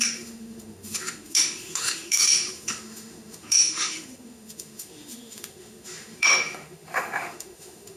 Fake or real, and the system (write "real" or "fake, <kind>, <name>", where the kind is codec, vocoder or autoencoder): fake, autoencoder, DAC-VAE